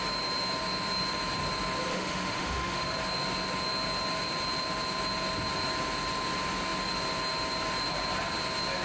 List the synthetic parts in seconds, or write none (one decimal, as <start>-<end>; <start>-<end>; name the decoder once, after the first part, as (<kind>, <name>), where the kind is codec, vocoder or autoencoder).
1.9-3.0 (autoencoder, DAC-VAE)